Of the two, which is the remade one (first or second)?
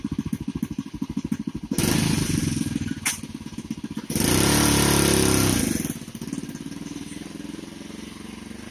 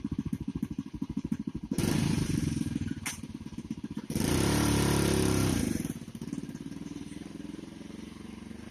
second